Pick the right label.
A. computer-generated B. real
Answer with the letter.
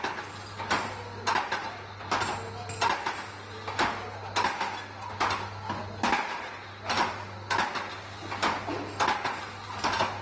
B